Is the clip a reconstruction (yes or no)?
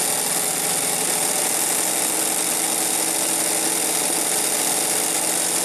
no